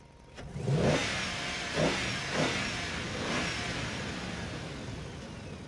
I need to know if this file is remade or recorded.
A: recorded